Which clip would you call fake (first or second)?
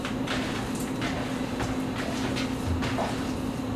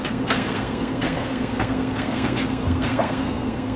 second